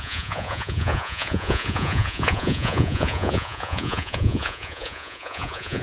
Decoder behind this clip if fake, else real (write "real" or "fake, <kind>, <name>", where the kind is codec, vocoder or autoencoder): fake, vocoder, Vocos